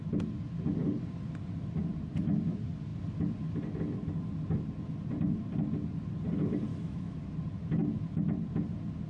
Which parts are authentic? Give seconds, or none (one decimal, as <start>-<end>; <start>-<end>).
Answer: 0.0-6.7; 7.2-9.1